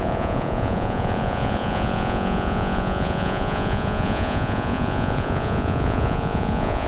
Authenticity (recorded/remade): remade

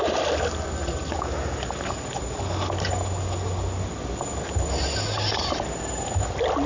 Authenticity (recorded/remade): recorded